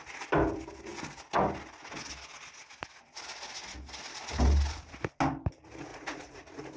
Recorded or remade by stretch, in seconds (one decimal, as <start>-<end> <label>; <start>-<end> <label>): 0.0-5.9 recorded; 5.9-6.8 remade